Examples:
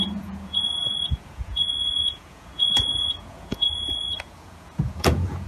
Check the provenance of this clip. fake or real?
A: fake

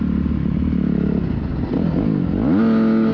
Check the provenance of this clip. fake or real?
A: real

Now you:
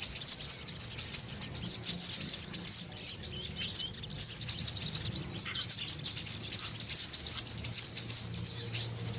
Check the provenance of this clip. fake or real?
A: real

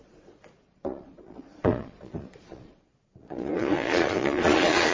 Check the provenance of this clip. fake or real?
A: fake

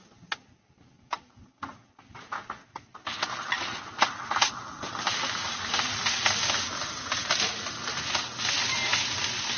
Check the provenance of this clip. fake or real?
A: real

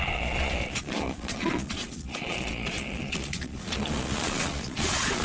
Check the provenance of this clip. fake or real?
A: fake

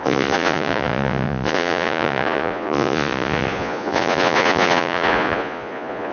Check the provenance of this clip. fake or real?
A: fake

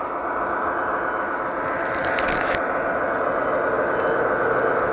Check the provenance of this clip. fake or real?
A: real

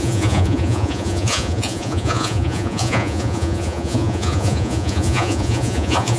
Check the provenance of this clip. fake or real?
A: fake